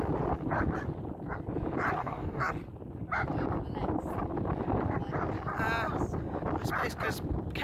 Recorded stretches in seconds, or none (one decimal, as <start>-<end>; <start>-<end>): 0.0-2.0; 2.5-7.6